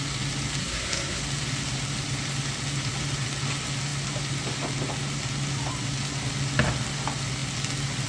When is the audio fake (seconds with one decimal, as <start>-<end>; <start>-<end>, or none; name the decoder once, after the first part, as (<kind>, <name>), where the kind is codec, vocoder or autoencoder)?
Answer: 0.6-1.2 (codec, SNAC)